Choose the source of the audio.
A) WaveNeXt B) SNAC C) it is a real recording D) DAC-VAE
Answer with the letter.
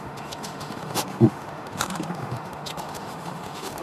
D